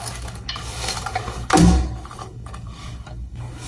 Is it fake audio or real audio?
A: fake